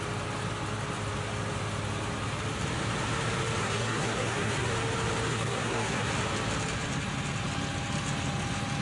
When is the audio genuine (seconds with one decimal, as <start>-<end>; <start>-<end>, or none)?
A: 0.0-3.6; 4.7-5.3; 6.1-8.8